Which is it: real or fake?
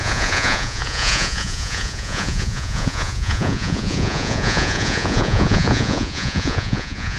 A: fake